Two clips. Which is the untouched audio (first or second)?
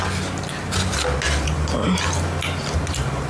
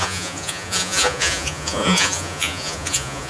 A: first